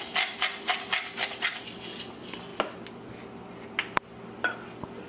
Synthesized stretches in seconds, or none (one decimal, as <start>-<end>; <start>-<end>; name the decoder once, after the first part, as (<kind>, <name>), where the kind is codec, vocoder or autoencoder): none